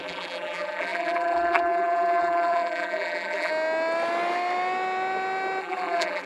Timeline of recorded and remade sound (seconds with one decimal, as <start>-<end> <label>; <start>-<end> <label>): 0.0-3.5 remade; 3.5-5.6 recorded; 5.6-6.3 remade